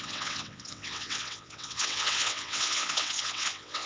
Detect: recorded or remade remade